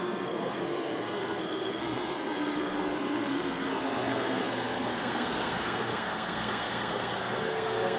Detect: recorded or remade remade